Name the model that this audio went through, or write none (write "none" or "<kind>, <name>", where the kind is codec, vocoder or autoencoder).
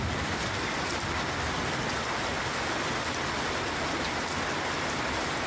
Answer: none